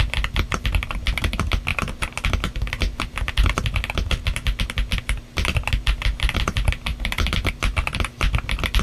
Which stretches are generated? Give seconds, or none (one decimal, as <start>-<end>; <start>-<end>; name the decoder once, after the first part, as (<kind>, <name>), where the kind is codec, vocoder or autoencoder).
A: 6.9-7.5 (vocoder, BigVGAN v2)